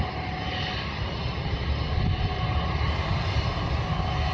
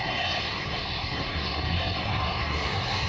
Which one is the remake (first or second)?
second